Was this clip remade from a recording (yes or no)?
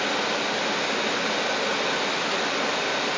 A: no